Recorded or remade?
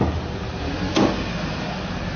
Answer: recorded